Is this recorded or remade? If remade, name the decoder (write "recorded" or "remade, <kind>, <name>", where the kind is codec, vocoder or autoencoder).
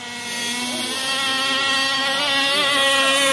recorded